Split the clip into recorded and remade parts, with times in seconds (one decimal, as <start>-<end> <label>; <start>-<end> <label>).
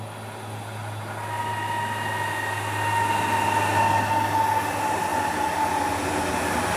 0.0-6.8 recorded